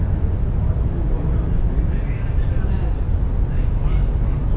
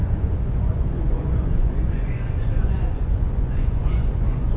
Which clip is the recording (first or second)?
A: first